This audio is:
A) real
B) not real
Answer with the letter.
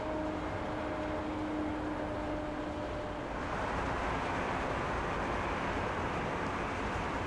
A